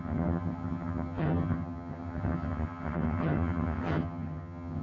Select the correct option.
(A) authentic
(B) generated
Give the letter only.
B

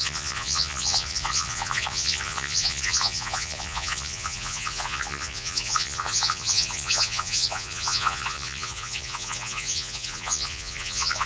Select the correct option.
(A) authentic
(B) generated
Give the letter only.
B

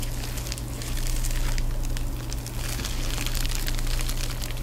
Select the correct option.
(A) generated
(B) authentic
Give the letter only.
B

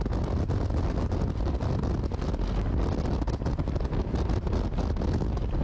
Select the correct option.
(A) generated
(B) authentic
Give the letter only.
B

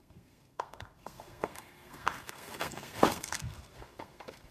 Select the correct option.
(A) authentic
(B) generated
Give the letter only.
B